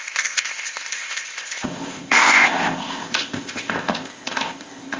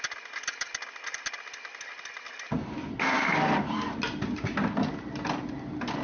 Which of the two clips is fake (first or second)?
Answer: first